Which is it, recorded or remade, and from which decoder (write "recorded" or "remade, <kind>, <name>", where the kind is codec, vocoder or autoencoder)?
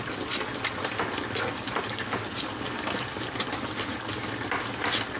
recorded